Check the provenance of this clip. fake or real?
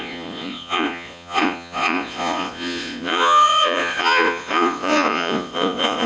fake